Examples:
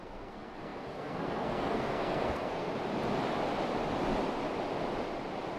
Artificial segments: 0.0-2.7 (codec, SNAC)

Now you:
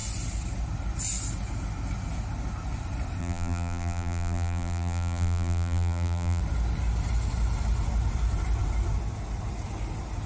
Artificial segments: 3.2-6.4 (vocoder, BigVGAN v2)